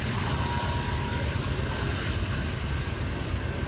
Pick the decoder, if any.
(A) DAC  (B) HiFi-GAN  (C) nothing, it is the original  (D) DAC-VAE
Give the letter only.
C